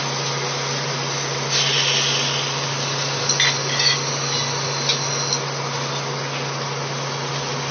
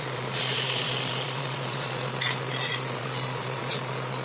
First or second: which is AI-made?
second